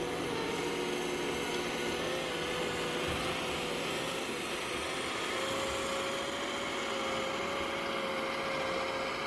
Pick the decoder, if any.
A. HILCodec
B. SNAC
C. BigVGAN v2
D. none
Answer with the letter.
D